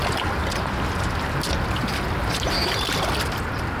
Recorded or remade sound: recorded